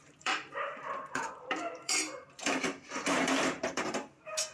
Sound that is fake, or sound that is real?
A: fake